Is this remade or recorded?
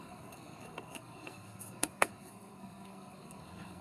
remade